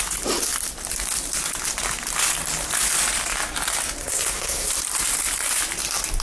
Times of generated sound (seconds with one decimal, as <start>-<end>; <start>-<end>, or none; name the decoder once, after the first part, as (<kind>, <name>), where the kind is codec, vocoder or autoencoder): 4.0-4.7 (codec, SNAC)